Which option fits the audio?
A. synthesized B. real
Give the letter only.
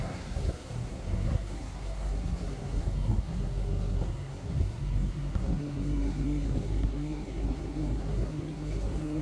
A